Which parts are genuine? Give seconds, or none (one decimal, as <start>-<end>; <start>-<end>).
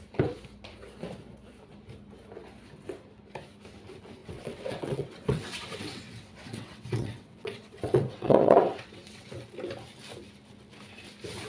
0.0-4.2; 9.3-11.5